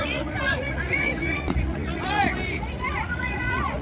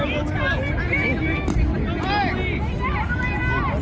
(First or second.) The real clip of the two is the second